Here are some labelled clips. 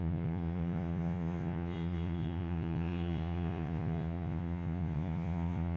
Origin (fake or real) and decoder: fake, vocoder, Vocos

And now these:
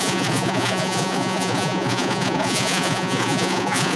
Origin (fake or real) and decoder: fake, vocoder, Vocos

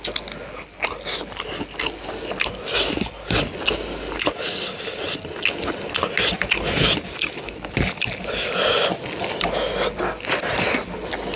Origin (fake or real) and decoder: real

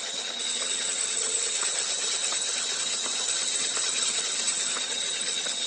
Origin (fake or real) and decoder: fake, vocoder, HiFi-GAN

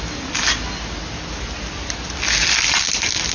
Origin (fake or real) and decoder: real